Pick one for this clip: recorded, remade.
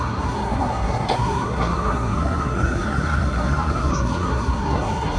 remade